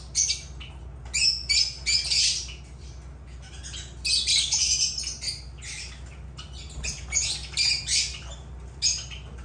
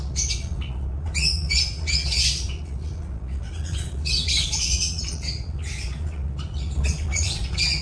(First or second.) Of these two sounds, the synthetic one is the second